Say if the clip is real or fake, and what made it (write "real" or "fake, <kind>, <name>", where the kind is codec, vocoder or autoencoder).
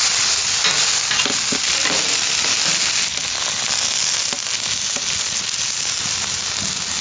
real